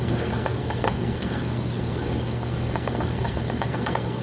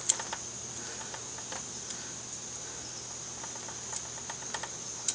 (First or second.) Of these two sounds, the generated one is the first